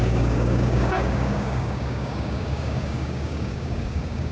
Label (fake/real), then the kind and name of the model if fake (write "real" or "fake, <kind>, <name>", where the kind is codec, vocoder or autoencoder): fake, codec, DAC